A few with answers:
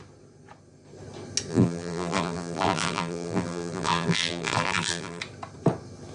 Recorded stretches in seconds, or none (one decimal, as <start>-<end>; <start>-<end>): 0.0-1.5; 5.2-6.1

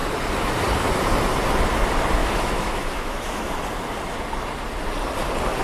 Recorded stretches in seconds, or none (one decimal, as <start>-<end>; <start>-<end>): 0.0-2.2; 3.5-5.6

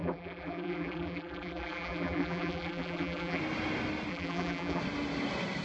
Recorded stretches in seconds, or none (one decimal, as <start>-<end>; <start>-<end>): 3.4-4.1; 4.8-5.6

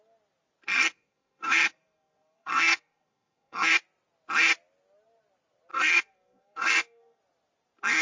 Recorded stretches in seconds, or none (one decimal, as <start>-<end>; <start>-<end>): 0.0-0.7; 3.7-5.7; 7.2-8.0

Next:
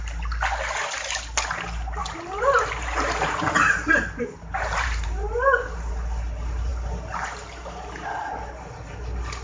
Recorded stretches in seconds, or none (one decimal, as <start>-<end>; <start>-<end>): 0.0-2.0; 5.9-9.4

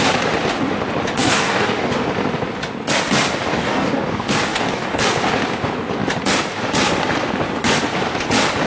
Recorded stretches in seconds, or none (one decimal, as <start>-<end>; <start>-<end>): 0.0-1.2; 1.9-3.5; 5.0-8.7